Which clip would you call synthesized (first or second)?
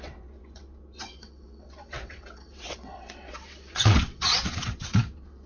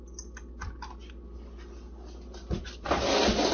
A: first